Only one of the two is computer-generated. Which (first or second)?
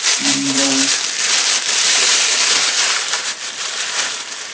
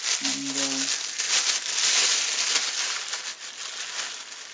first